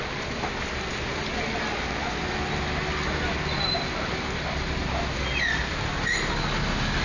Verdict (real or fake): real